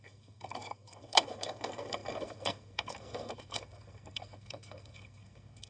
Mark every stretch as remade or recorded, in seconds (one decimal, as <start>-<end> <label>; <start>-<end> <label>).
0.0-5.7 remade